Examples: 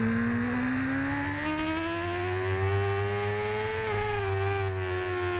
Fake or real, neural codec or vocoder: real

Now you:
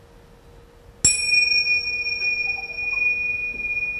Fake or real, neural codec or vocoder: real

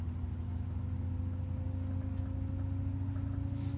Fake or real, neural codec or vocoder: real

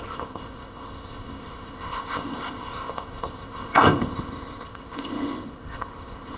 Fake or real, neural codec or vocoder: fake, codec, ZipCodec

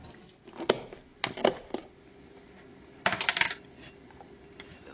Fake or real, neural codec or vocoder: real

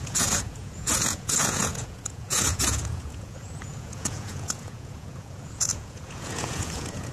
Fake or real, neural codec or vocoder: fake, vocoder, Vocos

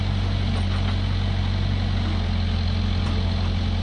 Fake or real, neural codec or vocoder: real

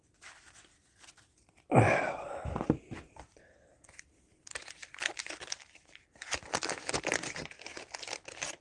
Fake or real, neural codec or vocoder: real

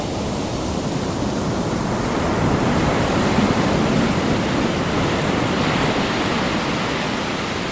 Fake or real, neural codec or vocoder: real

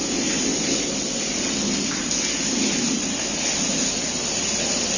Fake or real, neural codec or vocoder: real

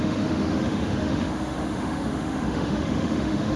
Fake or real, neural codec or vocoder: fake, autoencoder, DAC-VAE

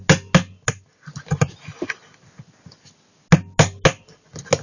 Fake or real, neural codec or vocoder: real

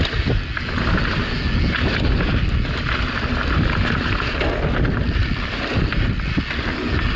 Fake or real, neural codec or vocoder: real